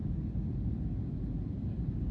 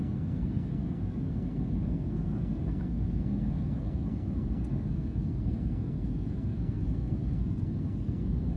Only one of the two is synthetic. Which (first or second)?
second